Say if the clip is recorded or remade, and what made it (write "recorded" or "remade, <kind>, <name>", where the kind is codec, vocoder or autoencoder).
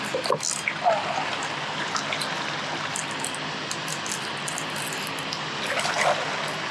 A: recorded